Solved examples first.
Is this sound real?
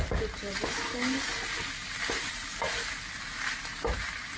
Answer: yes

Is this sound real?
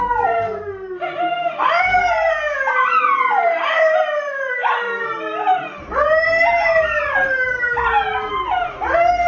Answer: no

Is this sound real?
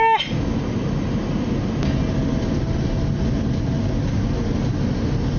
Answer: yes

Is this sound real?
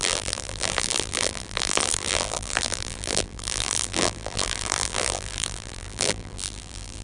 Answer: no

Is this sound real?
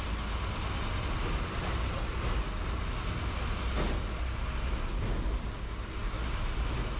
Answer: yes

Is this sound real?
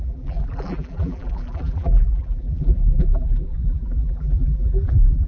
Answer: no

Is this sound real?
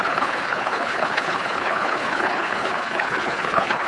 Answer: no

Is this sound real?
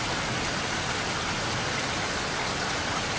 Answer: yes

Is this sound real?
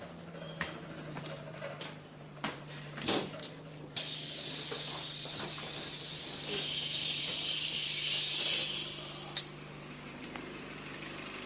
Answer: no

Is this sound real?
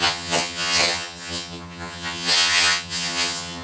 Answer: no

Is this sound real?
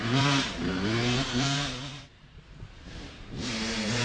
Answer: no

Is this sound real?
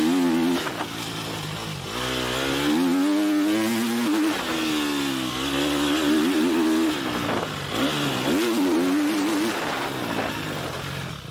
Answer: yes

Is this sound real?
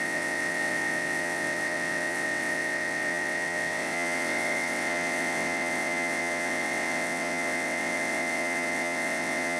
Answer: no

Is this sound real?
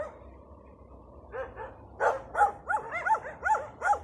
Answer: yes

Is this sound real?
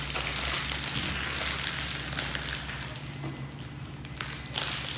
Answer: yes